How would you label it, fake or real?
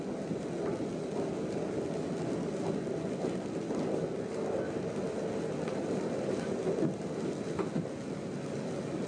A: real